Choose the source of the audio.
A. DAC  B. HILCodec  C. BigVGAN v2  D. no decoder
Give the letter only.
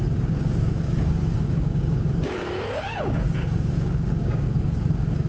A